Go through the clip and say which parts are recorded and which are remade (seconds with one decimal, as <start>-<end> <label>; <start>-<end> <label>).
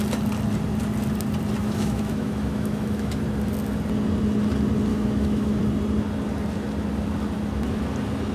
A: 0.0-1.6 recorded; 1.6-3.2 remade; 3.2-4.9 recorded; 4.9-5.6 remade; 5.6-8.3 recorded